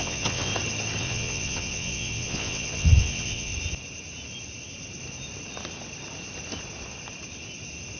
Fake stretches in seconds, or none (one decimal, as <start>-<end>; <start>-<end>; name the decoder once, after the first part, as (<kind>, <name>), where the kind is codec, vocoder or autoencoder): 0.0-0.5 (vocoder, WaveNeXt); 1.0-3.5